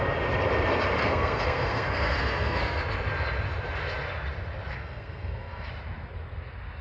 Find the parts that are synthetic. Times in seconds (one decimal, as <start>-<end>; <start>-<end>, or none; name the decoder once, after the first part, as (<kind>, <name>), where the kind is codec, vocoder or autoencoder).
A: 1.0-2.8 (codec, SNAC); 4.8-5.7